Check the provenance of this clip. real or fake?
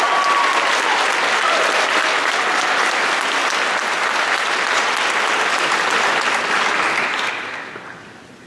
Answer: real